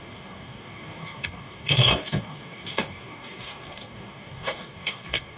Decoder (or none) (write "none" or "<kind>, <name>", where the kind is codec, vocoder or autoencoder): codec, DAC